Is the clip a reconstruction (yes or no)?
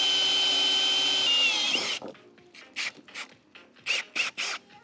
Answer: no